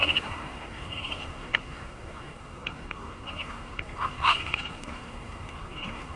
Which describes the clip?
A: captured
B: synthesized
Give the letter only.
B